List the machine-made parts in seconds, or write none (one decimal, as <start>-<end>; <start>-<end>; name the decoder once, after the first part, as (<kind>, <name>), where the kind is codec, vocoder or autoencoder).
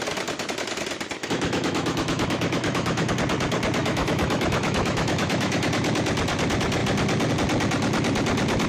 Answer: 1.2-3.1 (autoencoder, DAC-VAE); 3.8-5.7